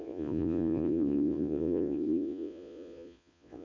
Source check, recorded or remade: remade